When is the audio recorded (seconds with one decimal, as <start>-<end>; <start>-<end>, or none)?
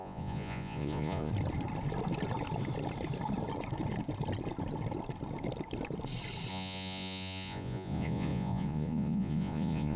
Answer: 1.3-6.5